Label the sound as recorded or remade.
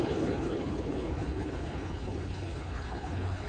remade